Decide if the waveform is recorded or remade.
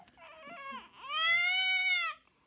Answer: recorded